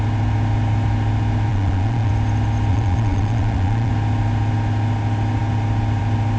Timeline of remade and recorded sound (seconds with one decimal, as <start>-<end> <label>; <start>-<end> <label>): 0.0-1.5 recorded; 1.5-2.1 remade; 2.1-2.7 recorded; 2.7-3.9 remade; 3.9-6.4 recorded